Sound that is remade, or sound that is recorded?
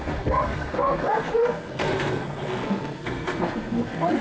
remade